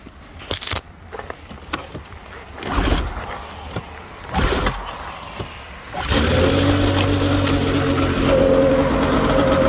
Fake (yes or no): no